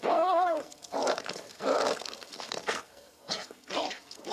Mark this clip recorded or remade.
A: remade